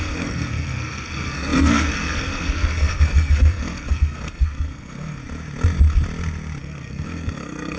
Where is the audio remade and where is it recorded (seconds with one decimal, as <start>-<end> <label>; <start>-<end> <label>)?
0.0-5.2 remade; 5.2-6.6 recorded; 6.6-7.8 remade